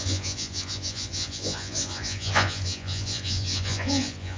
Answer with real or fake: fake